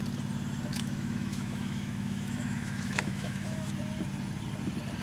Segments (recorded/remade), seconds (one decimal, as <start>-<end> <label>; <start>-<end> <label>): 0.0-0.7 recorded; 0.7-3.7 remade; 3.7-5.0 recorded